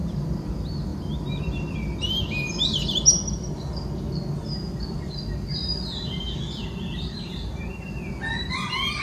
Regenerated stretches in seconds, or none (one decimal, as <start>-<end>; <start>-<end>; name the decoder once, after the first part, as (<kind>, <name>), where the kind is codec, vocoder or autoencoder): 0.0-0.5 (vocoder, BigVGAN v2); 0.9-4.4